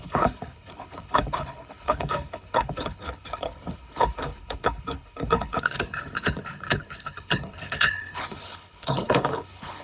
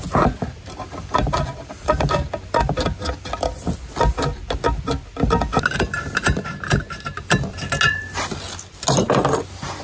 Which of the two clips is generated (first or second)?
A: first